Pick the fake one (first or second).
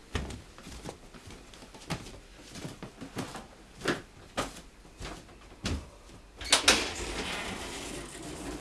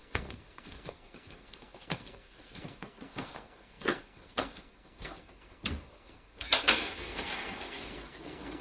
second